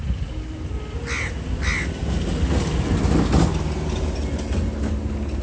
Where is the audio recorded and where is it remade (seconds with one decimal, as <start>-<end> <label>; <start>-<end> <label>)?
0.0-5.4 recorded

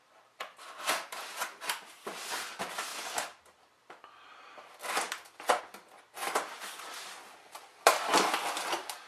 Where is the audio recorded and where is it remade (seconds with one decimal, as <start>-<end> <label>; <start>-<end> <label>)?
0.0-9.1 recorded

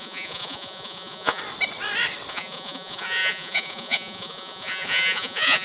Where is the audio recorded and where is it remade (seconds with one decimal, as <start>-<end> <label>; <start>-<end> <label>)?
0.0-1.4 remade; 1.4-2.3 recorded; 2.3-5.6 remade

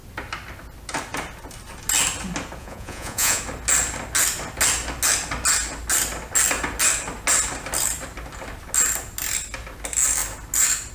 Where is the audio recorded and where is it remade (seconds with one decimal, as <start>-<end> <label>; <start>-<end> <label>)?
0.0-2.6 recorded; 2.6-3.4 remade; 3.4-10.9 recorded

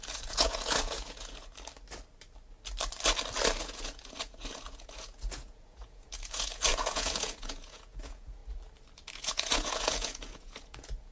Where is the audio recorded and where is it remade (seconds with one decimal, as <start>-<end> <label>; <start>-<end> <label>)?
0.0-1.5 remade; 1.5-3.6 recorded; 3.6-8.4 remade; 8.4-9.1 recorded; 9.1-11.1 remade